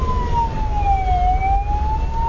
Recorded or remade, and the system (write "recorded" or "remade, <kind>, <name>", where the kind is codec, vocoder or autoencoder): recorded